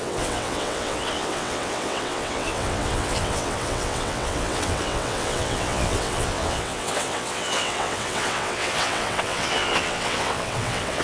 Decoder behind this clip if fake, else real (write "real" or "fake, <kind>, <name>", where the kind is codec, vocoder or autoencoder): fake, vocoder, WaveNeXt